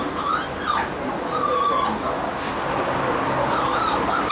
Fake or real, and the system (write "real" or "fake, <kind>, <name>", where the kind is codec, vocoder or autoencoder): real